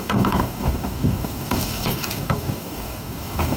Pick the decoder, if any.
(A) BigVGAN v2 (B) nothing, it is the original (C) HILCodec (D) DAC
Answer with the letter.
D